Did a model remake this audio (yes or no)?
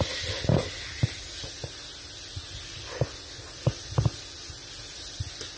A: no